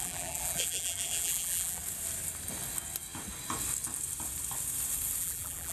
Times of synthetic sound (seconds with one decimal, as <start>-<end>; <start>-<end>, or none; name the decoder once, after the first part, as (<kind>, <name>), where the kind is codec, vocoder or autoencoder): 0.0-1.8 (vocoder, BigVGAN v2); 5.2-5.7